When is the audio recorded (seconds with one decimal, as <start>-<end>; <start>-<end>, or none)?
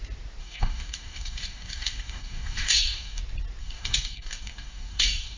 0.0-0.4; 3.2-3.6